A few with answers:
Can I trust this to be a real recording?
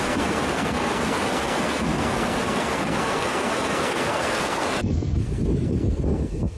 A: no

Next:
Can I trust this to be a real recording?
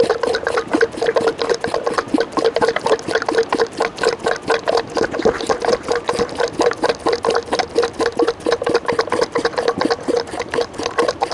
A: yes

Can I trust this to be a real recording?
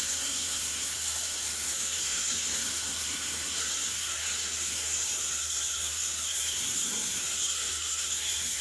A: no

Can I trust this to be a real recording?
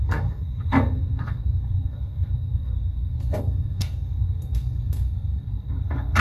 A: no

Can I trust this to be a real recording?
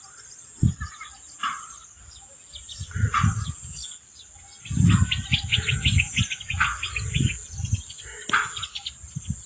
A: yes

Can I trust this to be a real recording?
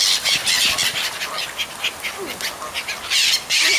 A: yes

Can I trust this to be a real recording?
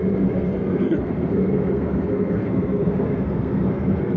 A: no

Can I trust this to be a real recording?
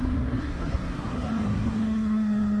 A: no